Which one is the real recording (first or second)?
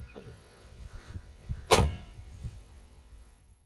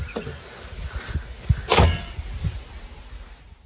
second